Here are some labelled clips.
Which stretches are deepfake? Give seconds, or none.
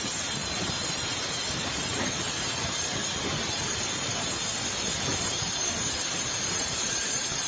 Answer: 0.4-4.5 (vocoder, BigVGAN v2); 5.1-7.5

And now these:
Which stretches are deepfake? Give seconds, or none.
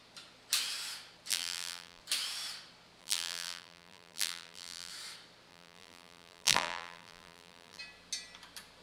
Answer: 1.3-2.0 (vocoder, BigVGAN v2); 3.0-4.9; 5.5-7.8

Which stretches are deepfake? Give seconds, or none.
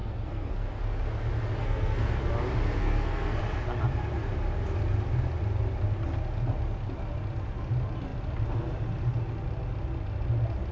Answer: 0.0-0.8 (codec, SNAC); 1.6-2.3; 2.8-3.4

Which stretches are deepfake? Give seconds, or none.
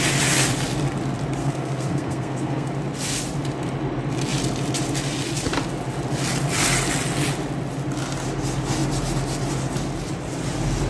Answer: 1.4-2.7 (codec, SNAC)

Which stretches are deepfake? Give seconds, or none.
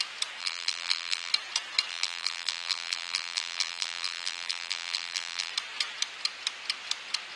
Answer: 0.4-1.3 (vocoder, BigVGAN v2); 1.9-5.5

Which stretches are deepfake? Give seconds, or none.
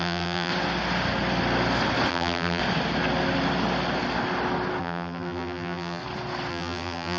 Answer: 0.0-0.5 (vocoder, BigVGAN v2); 2.1-2.6; 4.8-6.0; 6.5-7.2